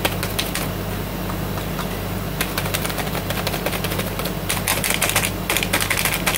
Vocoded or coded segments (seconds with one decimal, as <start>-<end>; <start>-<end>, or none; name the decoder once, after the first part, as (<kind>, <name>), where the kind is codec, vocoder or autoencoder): none